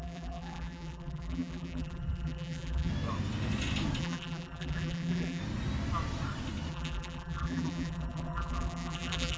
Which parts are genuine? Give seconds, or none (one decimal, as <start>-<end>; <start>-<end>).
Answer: 2.9-4.0; 5.4-6.7